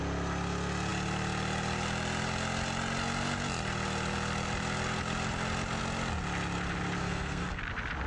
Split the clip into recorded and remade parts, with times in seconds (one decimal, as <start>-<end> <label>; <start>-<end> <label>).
0.0-7.0 recorded; 7.0-7.6 remade; 7.6-8.1 recorded